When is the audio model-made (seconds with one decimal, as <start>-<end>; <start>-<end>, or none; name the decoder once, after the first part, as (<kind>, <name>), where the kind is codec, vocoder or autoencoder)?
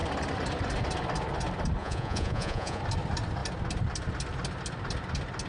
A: 1.8-2.8 (vocoder, Vocos)